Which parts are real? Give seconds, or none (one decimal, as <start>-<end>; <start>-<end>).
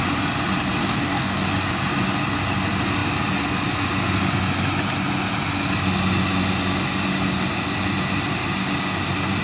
0.0-0.8; 1.5-9.4